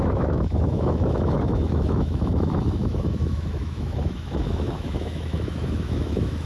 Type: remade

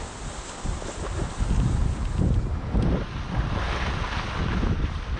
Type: recorded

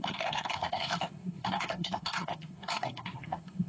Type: remade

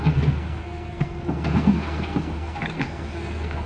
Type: remade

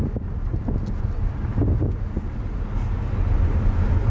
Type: recorded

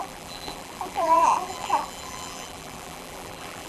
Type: remade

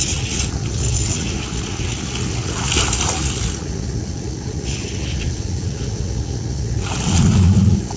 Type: remade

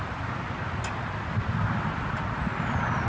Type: recorded